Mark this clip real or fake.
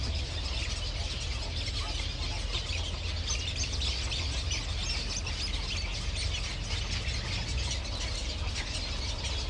real